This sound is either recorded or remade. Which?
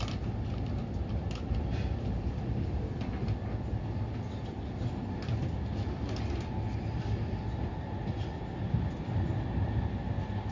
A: recorded